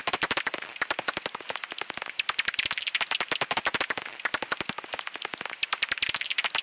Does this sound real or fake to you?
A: real